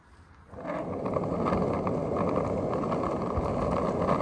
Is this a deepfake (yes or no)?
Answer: no